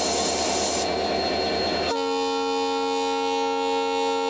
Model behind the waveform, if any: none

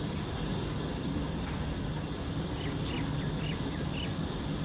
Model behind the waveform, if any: none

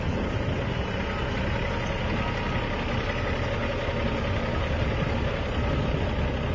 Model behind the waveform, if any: none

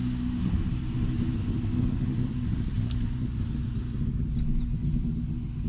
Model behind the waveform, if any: none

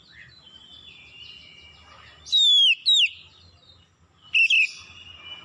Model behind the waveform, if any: none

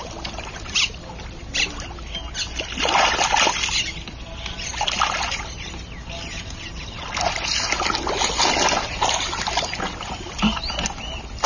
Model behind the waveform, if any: none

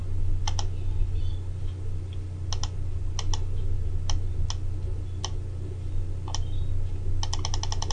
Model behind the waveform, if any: none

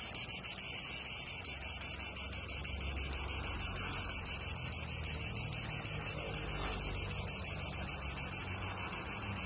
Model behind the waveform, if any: none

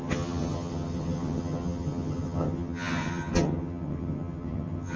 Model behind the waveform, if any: vocoder, HiFi-GAN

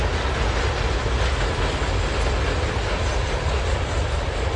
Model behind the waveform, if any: none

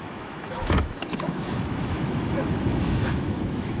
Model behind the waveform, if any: autoencoder, DAC-VAE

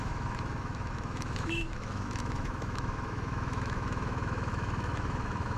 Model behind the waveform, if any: autoencoder, DAC-VAE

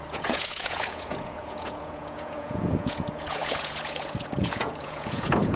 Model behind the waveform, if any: vocoder, Vocos